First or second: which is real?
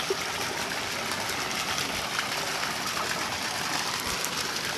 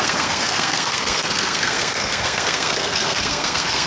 first